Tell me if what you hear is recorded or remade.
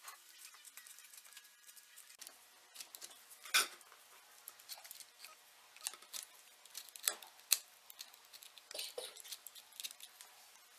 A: recorded